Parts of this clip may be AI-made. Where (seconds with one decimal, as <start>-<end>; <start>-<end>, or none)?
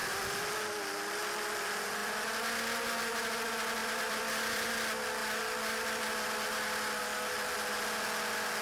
3.8-4.7